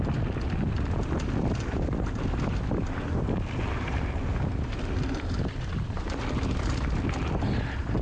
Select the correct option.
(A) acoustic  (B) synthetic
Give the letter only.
B